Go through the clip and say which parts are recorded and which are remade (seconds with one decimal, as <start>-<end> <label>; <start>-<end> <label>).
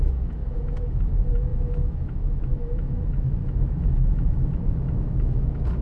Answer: 0.0-5.8 remade